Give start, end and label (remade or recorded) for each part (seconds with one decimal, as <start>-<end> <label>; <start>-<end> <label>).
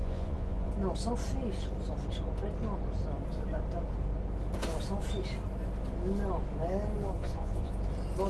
0.0-0.7 remade; 0.7-7.2 recorded; 7.2-7.7 remade; 7.7-8.3 recorded